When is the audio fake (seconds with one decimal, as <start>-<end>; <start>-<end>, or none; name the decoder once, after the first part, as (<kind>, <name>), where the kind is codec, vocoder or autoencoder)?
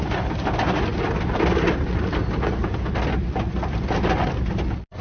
none